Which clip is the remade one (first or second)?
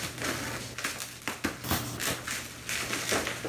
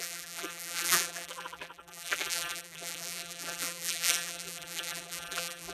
second